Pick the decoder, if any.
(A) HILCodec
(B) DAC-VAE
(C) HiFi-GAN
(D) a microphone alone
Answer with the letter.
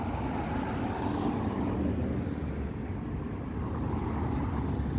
D